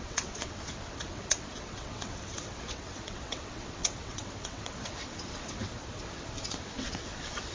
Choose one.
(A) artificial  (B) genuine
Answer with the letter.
A